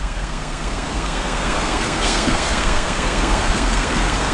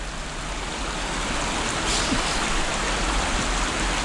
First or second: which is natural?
second